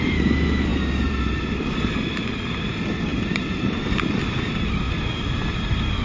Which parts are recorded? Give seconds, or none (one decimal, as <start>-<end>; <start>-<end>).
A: 0.0-0.7; 1.2-3.1; 4.2-6.0